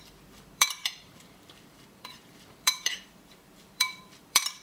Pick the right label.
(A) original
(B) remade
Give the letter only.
B